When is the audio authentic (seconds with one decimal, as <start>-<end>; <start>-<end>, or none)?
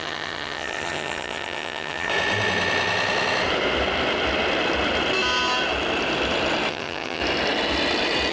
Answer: 2.1-6.7; 7.2-8.3